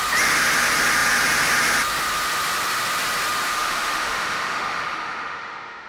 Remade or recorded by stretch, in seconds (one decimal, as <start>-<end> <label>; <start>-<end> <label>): 0.0-3.5 recorded; 3.5-5.9 remade